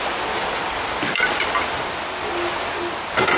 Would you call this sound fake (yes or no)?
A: no